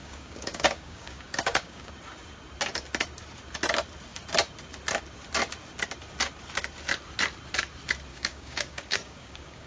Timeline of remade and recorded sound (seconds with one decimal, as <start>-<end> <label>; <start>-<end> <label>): 0.0-1.9 remade; 1.9-8.1 recorded; 8.1-9.7 remade